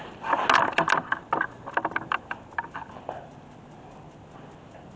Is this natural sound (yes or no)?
yes